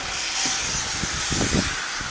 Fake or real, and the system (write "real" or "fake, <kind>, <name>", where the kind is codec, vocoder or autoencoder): real